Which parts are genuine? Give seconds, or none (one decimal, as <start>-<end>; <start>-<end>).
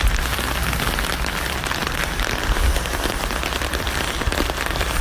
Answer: none